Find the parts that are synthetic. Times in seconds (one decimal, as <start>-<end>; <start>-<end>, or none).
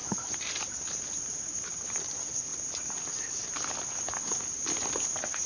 none